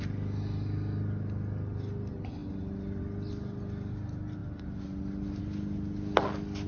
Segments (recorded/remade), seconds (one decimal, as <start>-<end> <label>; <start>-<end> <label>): 0.0-6.7 recorded